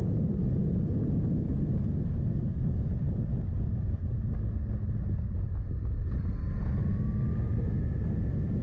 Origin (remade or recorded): recorded